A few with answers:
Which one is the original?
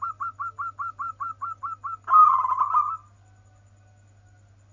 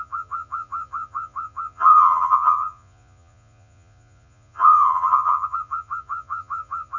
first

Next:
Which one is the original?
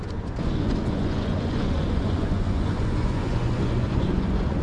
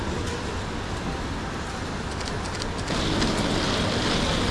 second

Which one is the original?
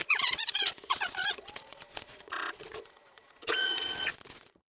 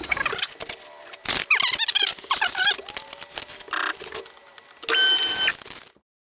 second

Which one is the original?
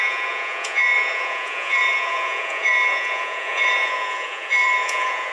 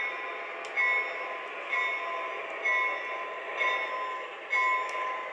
second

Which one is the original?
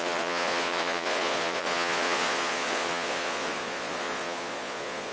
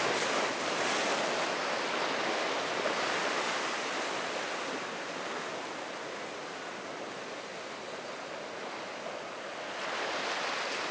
second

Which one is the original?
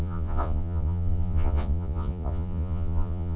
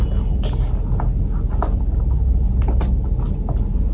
second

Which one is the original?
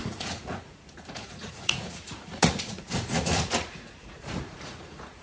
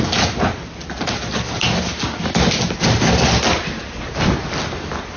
second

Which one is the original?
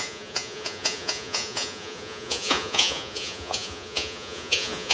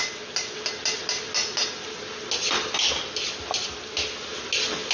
second